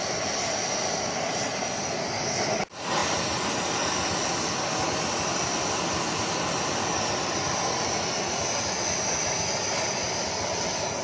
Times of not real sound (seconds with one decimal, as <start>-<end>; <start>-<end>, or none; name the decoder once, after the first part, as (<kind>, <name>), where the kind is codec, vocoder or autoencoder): none